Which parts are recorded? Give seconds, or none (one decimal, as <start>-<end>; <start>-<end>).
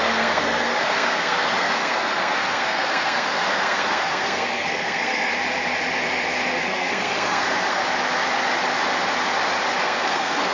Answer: 5.3-6.6; 7.8-9.8